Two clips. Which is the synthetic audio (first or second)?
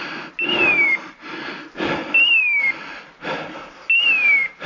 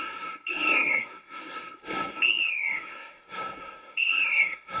second